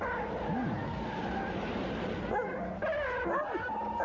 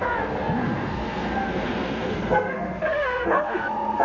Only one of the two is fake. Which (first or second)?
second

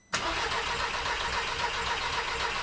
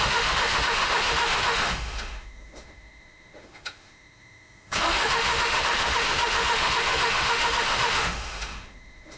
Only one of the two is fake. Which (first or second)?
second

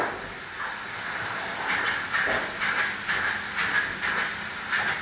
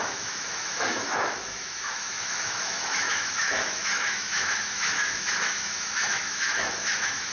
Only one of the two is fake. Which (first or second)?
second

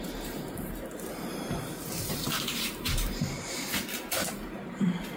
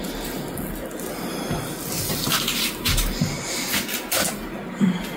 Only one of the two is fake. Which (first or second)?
first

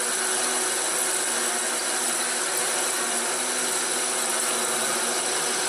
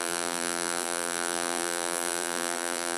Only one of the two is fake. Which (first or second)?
second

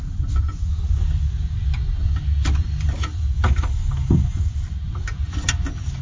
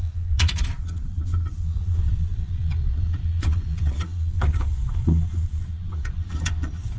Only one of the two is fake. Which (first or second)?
second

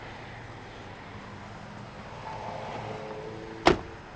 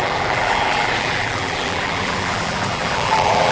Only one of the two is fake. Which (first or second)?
second